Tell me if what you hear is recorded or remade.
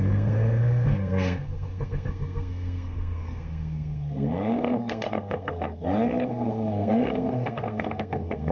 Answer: remade